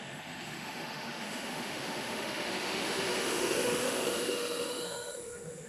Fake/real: fake